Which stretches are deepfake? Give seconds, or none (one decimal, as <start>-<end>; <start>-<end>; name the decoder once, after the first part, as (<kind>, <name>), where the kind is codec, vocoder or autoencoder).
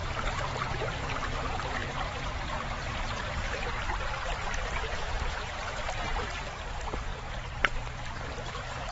0.5-1.8 (vocoder, BigVGAN v2); 2.9-8.9